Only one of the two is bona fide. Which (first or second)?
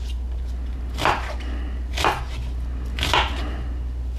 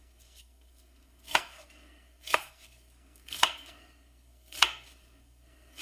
first